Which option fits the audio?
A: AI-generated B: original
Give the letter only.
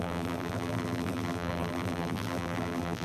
A